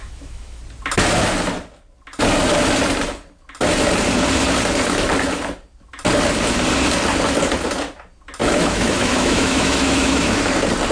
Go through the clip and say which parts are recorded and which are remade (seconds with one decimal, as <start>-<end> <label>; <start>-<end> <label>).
0.0-0.6 remade; 0.6-8.4 recorded; 8.4-10.4 remade; 10.4-10.9 recorded

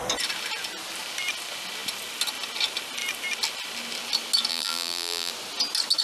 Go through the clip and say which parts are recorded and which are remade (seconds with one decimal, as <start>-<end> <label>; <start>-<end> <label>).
0.0-4.5 recorded; 4.5-5.3 remade; 5.3-6.0 recorded